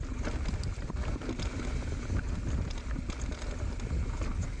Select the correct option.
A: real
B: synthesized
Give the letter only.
A